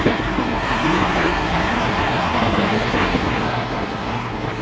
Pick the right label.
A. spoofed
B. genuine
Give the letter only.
A